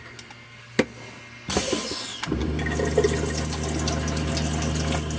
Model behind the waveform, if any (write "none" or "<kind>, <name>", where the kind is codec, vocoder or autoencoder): none